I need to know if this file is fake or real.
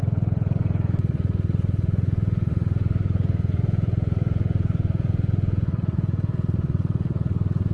fake